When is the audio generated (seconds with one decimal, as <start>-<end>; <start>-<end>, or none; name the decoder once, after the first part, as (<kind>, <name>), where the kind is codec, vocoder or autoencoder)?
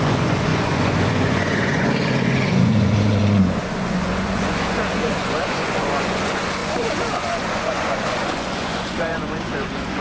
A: 0.0-10.0 (vocoder, Vocos)